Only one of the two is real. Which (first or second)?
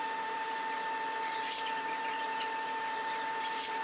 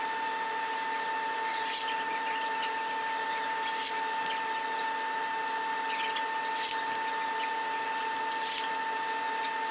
second